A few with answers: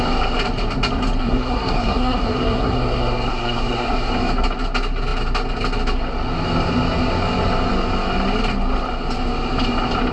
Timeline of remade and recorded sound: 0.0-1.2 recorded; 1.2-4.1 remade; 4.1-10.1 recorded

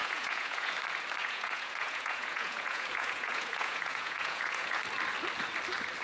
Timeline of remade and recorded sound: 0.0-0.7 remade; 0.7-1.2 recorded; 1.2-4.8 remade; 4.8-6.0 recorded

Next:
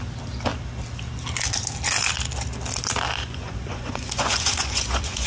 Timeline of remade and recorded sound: 0.0-3.2 recorded; 3.2-5.3 remade

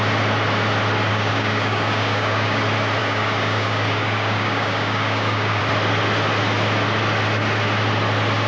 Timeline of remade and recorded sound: 0.0-1.1 recorded; 1.1-2.6 remade; 2.6-3.0 recorded; 3.0-5.6 remade; 5.6-8.5 recorded